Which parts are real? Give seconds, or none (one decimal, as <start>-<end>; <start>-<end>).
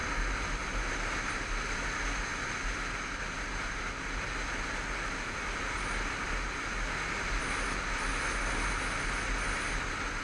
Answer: 0.0-10.2